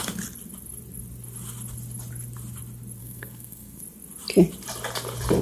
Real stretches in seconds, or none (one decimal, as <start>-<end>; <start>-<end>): 0.0-3.0; 3.8-5.4